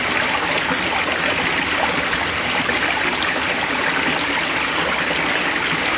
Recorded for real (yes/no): yes